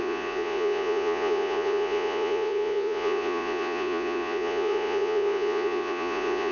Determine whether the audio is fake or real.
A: fake